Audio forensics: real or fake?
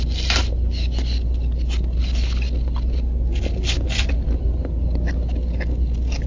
real